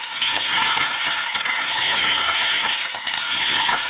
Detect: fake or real fake